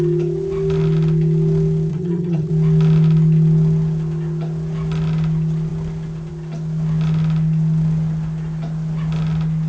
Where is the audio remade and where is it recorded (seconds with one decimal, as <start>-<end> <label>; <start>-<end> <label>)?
0.0-1.9 recorded; 1.9-2.5 remade; 2.5-9.7 recorded